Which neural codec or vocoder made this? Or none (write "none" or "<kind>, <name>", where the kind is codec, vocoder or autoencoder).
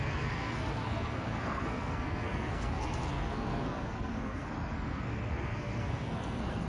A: codec, SNAC